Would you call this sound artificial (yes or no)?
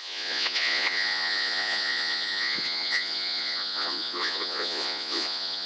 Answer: yes